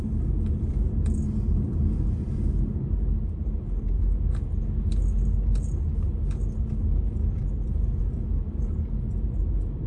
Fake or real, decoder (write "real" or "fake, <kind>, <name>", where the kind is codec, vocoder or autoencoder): real